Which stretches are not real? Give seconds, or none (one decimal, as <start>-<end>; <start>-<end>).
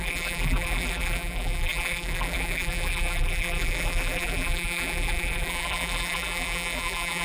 0.0-7.2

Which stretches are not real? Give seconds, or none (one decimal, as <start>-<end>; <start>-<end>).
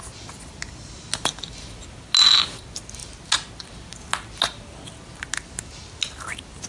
none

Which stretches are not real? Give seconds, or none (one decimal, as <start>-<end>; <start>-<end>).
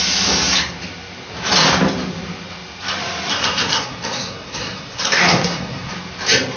3.3-5.9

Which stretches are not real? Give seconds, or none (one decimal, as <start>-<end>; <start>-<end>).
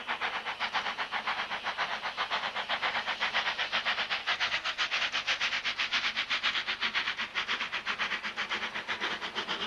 4.2-5.0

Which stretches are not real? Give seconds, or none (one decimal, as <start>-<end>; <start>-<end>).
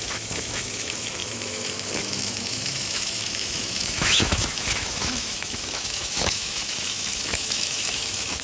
0.0-8.4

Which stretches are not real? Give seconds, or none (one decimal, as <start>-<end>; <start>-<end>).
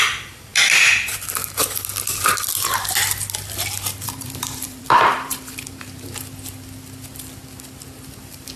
3.9-6.2